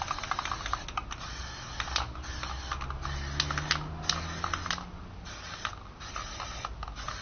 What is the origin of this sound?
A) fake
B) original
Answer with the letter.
B